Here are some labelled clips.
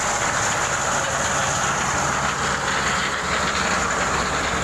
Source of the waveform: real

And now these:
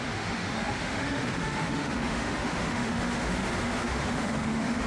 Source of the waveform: fake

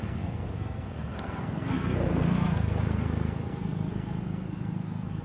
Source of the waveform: fake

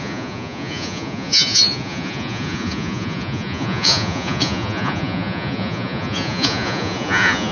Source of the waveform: fake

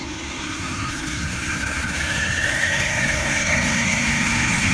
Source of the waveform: fake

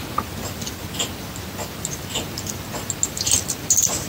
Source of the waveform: real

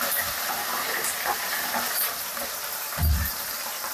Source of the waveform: fake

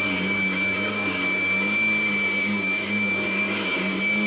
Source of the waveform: fake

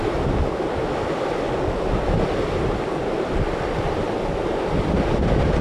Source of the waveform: real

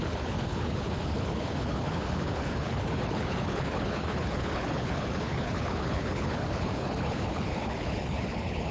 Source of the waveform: fake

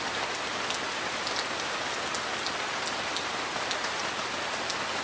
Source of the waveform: real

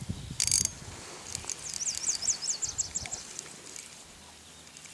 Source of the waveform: real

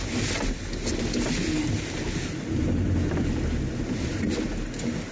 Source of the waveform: real